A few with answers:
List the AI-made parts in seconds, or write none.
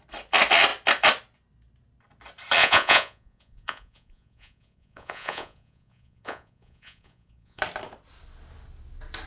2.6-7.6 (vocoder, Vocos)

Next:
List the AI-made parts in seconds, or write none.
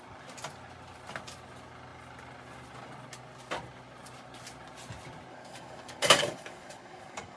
5.3-7.4 (codec, DAC)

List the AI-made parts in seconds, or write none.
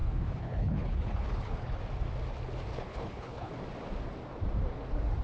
0.0-1.8 (codec, HILCodec); 2.7-3.5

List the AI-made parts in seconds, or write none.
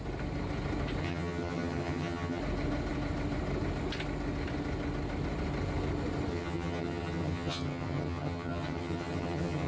1.0-2.4 (vocoder, HiFi-GAN); 6.3-9.7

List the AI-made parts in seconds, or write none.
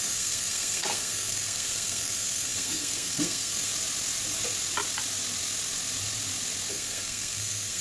0.0-3.7 (codec, SNAC); 6.7-7.8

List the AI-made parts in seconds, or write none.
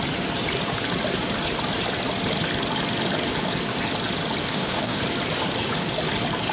4.4-5.0 (codec, DAC)